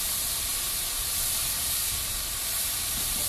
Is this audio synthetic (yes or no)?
yes